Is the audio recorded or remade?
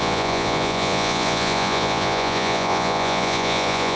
remade